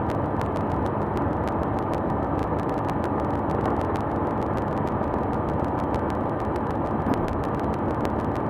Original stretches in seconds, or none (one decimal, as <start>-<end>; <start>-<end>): 0.0-8.5